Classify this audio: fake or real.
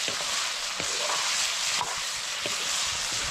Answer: real